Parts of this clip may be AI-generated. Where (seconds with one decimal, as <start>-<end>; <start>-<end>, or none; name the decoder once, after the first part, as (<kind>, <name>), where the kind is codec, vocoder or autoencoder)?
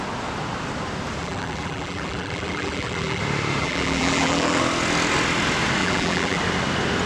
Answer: 1.2-3.2 (vocoder, BigVGAN v2); 3.6-4.6; 5.8-6.4